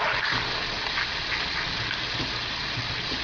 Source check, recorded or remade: recorded